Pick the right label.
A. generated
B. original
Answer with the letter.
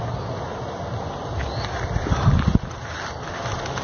B